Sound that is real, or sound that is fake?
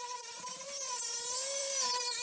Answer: fake